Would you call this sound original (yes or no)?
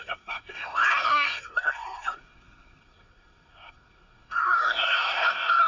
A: no